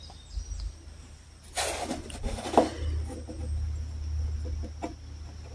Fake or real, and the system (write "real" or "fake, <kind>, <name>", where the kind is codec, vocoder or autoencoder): real